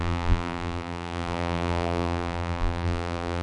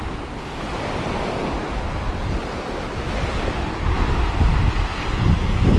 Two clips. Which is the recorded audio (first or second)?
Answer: second